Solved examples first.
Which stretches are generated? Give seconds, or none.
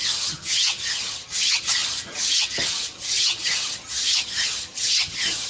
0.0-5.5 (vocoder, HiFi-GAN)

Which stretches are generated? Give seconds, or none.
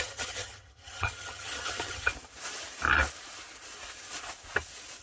0.0-2.1 (vocoder, HiFi-GAN)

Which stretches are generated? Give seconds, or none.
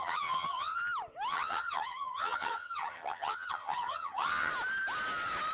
0.0-0.8 (vocoder, HiFi-GAN); 1.3-4.5